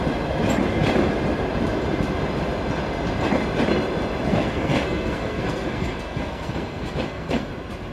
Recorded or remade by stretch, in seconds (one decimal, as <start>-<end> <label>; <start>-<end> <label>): 0.0-4.3 recorded; 4.3-7.5 remade; 7.5-7.9 recorded